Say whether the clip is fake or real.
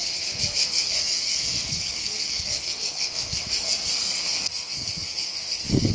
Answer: fake